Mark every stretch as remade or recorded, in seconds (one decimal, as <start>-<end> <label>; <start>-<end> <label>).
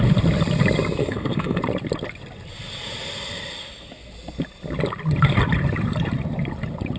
0.0-1.0 recorded; 1.0-1.6 remade; 1.6-7.0 recorded